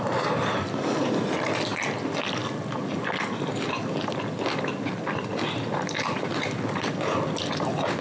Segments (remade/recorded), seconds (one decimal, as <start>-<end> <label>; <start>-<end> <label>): 0.0-8.0 recorded